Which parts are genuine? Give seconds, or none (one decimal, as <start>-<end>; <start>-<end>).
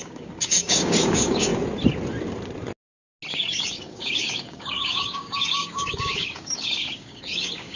1.5-3.3